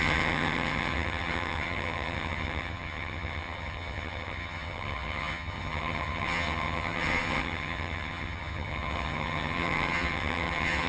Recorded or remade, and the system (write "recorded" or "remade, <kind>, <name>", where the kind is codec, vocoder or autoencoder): remade, vocoder, HiFi-GAN